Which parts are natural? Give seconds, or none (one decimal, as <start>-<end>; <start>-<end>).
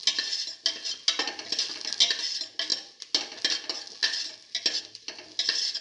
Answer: 0.0-5.8